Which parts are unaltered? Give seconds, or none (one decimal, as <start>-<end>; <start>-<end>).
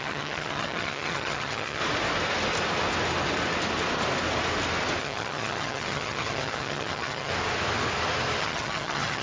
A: 1.8-5.0; 7.3-8.4